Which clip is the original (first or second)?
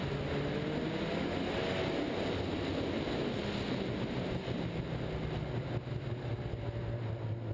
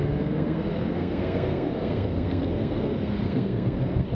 first